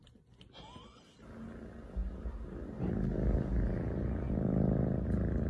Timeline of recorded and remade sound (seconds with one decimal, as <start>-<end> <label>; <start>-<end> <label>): 0.0-5.5 recorded